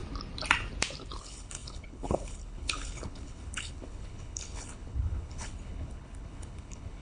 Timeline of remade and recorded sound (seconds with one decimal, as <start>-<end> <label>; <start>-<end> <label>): 0.0-1.2 recorded; 1.2-7.0 remade